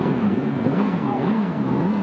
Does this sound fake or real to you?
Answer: fake